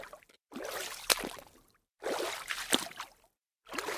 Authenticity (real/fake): real